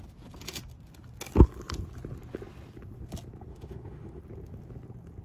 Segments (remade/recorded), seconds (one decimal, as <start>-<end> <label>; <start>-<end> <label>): 0.0-3.5 recorded; 3.5-4.2 remade; 4.2-5.2 recorded